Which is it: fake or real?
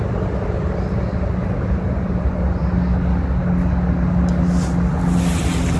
real